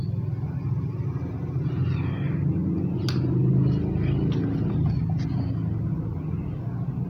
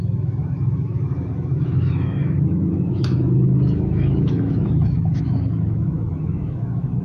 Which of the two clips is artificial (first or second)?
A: second